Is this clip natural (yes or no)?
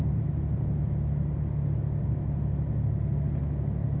yes